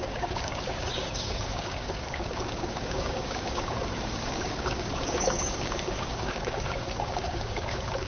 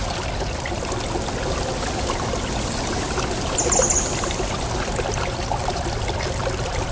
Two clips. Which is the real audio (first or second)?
second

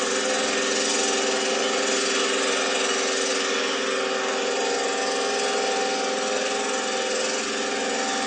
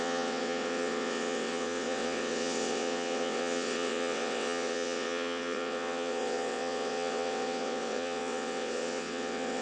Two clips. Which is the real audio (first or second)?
first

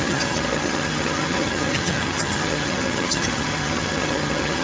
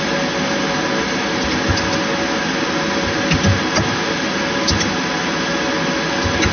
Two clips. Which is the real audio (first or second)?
second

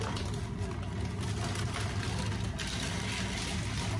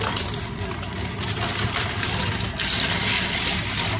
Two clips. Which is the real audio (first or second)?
first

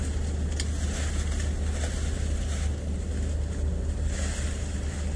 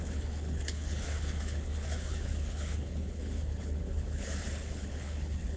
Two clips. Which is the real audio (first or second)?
first